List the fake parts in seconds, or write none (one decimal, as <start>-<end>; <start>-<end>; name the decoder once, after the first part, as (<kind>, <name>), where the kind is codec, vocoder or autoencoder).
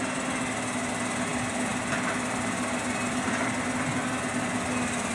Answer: none